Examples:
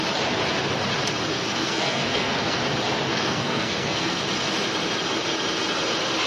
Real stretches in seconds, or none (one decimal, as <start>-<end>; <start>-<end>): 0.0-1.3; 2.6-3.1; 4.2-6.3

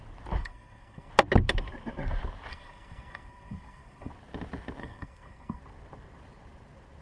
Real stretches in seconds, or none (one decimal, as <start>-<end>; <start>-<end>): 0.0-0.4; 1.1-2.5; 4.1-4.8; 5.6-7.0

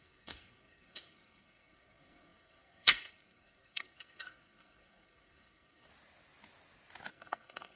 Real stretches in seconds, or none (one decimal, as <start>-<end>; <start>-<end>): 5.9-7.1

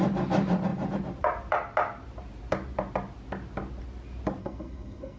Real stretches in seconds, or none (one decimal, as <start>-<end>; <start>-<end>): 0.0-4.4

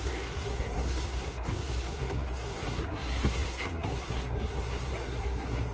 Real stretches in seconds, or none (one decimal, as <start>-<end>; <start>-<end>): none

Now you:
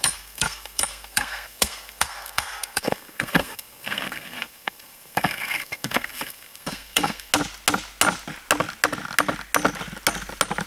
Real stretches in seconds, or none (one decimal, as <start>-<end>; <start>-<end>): 7.3-10.7

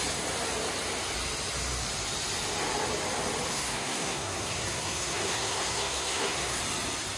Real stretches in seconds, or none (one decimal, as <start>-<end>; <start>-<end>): 0.0-3.5; 6.6-7.2